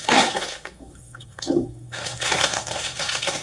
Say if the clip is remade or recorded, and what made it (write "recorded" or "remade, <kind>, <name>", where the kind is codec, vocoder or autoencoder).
remade, codec, SNAC